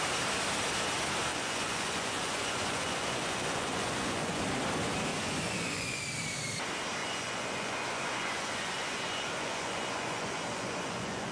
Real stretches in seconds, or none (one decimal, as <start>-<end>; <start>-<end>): 0.0-1.3; 4.4-5.1; 6.0-7.0